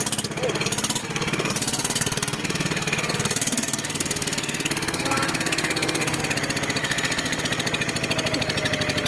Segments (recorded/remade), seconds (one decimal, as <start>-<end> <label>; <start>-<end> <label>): 0.0-1.0 recorded; 1.0-6.2 remade; 6.2-6.8 recorded; 6.8-7.4 remade; 7.4-9.1 recorded